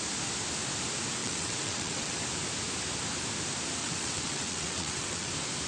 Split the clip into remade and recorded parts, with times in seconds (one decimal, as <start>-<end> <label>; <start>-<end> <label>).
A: 0.0-1.2 recorded; 1.2-2.2 remade; 2.2-3.8 recorded; 3.8-5.3 remade; 5.3-5.7 recorded